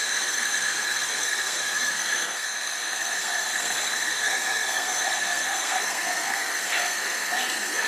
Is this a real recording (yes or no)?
no